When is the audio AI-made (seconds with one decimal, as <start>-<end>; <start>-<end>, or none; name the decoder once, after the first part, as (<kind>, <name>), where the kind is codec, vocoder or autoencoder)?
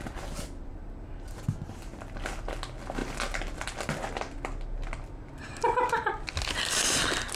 none